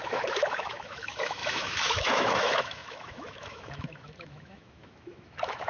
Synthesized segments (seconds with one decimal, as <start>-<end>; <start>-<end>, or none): 0.0-5.7

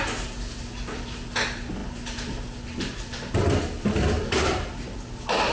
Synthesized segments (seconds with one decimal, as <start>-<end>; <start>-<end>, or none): none

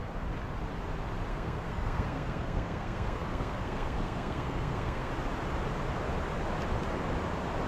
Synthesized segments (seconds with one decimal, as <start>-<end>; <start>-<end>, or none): 1.3-5.1

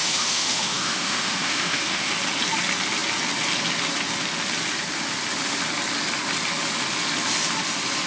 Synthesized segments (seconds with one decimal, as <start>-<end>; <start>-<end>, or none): 0.0-2.1

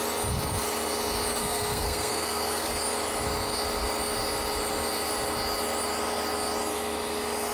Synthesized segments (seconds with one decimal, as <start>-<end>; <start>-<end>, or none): 1.4-2.8

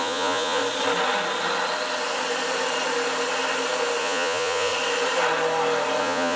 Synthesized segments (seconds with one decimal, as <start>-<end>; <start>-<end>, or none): 0.0-0.6; 4.0-4.7; 6.0-6.4

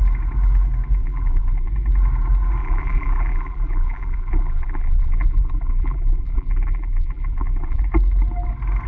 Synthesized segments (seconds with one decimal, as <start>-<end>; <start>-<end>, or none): 1.0-1.7; 2.6-7.8

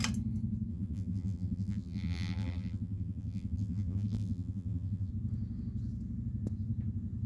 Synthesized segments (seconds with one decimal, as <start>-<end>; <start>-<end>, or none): 0.7-5.1